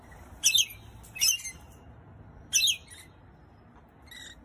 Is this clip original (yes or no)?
yes